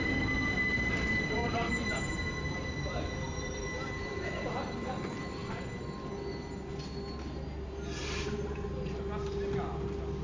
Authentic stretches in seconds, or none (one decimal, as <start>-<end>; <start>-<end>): 0.0-1.4; 4.4-8.0; 9.0-10.2